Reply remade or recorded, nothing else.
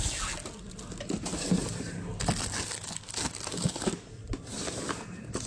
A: recorded